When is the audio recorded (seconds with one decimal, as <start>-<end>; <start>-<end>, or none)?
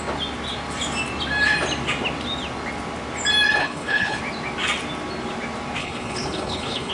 0.0-3.6; 4.2-5.8